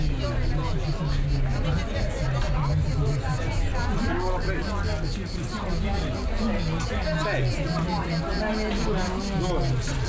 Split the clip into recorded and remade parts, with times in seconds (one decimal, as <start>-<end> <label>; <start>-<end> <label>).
0.0-10.1 recorded